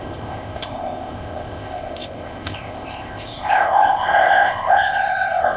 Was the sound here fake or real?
fake